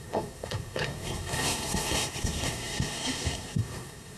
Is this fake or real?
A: fake